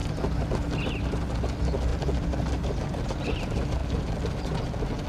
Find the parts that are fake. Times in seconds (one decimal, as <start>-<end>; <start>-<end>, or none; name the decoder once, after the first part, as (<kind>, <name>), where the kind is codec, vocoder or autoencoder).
none